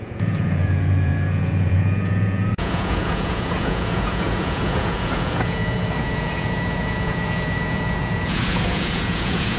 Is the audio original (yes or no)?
no